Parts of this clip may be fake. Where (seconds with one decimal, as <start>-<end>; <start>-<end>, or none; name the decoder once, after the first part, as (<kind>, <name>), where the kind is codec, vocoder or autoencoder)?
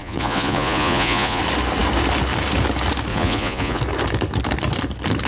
0.0-1.4 (vocoder, Vocos); 3.1-3.8